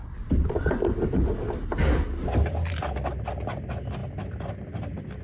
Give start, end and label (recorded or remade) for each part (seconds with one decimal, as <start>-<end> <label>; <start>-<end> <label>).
0.0-3.1 remade; 3.1-4.0 recorded; 4.0-5.2 remade